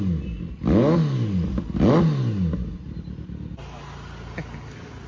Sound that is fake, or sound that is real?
real